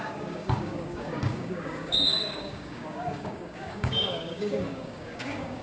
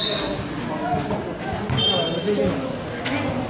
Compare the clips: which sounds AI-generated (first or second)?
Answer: first